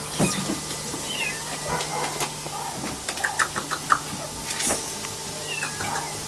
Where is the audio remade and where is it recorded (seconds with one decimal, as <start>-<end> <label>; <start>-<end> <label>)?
0.0-6.3 recorded